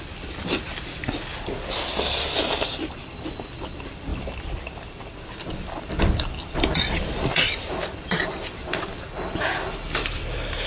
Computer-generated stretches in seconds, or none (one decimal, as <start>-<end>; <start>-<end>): 0.0-1.3; 2.4-8.9; 10.0-10.7